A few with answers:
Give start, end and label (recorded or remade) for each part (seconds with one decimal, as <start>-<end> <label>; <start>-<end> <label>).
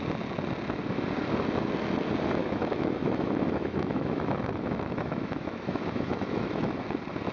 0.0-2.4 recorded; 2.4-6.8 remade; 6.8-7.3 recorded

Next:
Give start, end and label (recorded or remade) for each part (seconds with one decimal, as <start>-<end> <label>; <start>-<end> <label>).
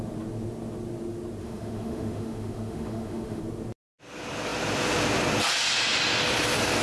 0.0-1.4 recorded; 1.4-3.4 remade; 3.4-6.8 recorded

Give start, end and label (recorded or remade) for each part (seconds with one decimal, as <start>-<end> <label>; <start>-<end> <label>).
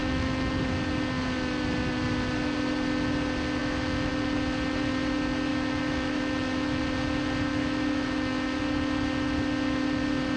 0.0-0.5 remade; 0.5-3.6 recorded; 3.6-4.1 remade; 4.1-5.5 recorded; 5.5-6.8 remade; 6.8-7.5 recorded; 7.5-8.6 remade; 8.6-10.4 recorded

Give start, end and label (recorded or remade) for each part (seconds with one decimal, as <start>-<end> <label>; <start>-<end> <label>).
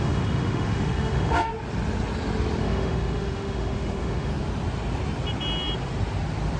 0.0-1.5 remade; 1.5-2.6 recorded; 2.6-4.3 remade; 4.3-6.6 recorded